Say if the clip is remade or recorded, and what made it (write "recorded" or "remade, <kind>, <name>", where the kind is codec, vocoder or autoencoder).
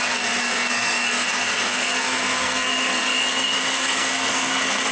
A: remade, codec, SNAC